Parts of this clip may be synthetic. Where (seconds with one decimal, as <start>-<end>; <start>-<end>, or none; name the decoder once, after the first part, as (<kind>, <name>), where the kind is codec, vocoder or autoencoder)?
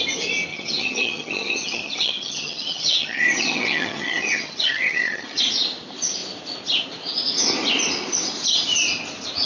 0.5-5.4 (vocoder, HiFi-GAN)